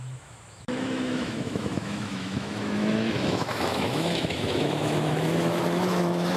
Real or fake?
fake